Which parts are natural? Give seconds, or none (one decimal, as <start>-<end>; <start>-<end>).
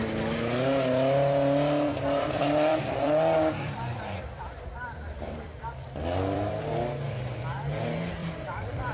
0.0-1.9; 6.5-8.2